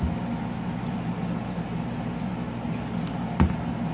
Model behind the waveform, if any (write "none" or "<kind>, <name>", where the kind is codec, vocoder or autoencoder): none